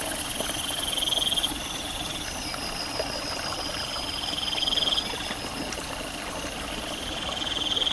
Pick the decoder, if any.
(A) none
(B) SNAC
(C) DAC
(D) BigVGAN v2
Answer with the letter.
A